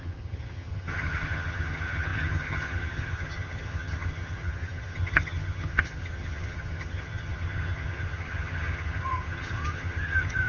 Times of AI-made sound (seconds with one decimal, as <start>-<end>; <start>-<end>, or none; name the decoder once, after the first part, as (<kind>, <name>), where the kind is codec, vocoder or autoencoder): 0.0-10.5 (vocoder, HiFi-GAN)